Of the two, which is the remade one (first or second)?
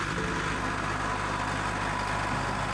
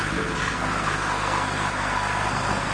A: second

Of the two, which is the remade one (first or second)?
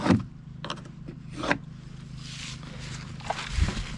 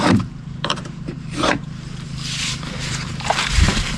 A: second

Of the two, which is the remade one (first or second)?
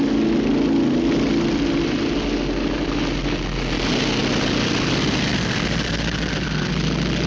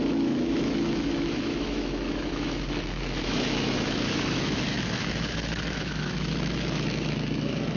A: second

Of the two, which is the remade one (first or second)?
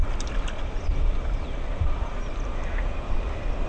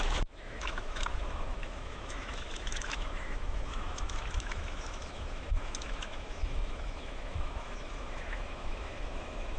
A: second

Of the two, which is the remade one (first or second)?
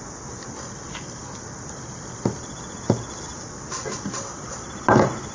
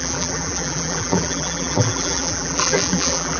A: second